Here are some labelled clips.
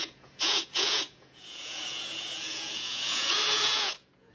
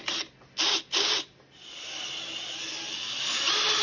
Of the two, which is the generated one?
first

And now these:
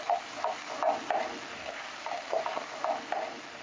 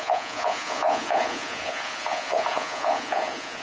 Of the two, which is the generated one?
second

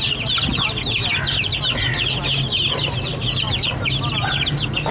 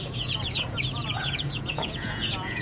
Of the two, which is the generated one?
second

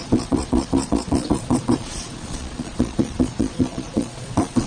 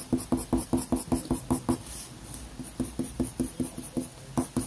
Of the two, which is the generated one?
first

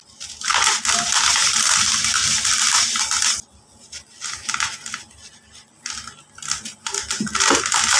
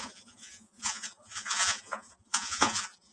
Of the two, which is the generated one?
second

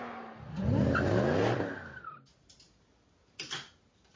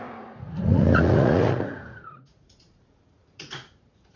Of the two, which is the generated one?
second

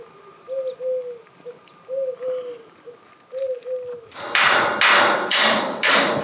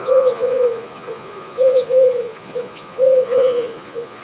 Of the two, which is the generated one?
second